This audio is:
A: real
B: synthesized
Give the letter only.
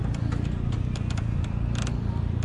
A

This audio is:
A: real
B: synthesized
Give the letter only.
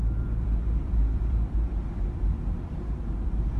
B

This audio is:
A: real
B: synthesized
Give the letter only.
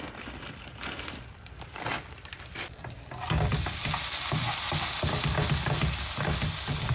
A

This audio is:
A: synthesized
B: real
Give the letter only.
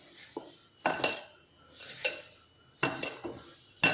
B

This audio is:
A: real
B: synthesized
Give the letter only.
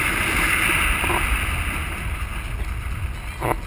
A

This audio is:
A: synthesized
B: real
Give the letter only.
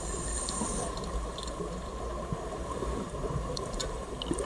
A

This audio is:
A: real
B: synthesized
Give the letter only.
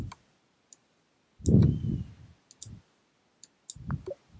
A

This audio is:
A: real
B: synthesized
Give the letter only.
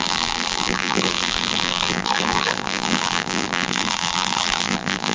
B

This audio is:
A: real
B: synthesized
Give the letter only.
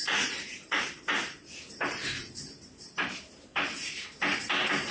B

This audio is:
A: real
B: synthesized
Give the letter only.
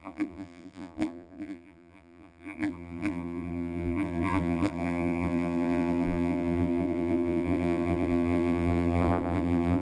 B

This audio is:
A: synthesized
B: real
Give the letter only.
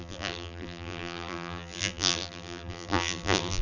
A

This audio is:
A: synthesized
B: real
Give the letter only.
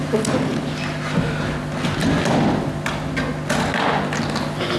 B